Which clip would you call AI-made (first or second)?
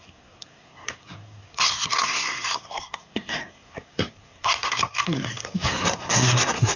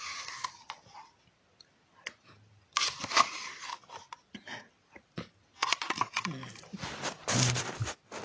first